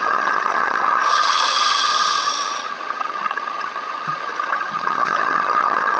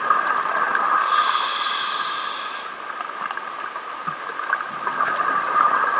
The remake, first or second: first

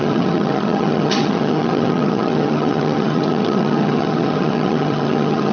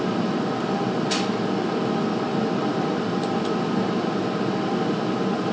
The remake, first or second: first